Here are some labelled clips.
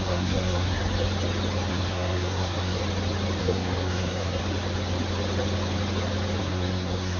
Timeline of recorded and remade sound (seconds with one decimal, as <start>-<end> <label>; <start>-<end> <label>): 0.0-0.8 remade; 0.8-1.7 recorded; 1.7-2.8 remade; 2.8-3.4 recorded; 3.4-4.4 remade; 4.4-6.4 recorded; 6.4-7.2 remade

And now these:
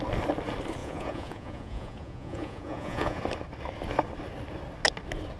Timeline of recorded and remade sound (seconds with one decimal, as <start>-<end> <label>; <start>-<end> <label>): 0.0-0.8 recorded; 0.8-3.2 remade; 3.2-5.4 recorded

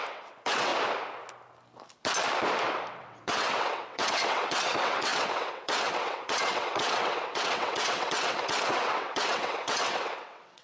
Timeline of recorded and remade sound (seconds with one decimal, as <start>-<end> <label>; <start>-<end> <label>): 0.0-0.7 remade; 0.7-2.9 recorded; 2.9-10.6 remade

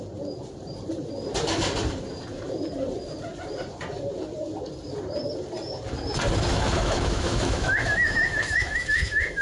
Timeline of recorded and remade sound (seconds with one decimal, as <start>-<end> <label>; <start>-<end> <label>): 0.0-6.5 recorded; 6.5-9.4 remade

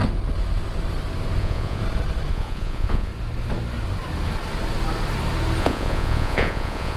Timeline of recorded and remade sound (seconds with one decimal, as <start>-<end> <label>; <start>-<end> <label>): 0.0-1.4 recorded; 1.4-1.8 remade; 1.8-2.3 recorded; 2.3-3.1 remade; 3.1-5.6 recorded; 5.6-7.0 remade

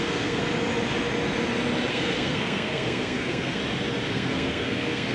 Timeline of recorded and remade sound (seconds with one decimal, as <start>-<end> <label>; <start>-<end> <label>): 0.0-0.4 remade; 0.4-1.9 recorded; 1.9-3.6 remade; 3.6-4.1 recorded; 4.1-5.1 remade